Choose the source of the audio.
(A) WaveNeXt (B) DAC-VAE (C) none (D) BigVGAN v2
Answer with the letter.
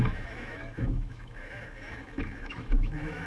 B